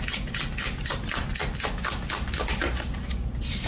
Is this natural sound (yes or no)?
yes